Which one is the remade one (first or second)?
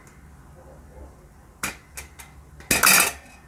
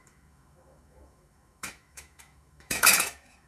second